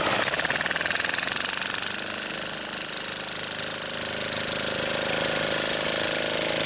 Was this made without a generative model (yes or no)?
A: yes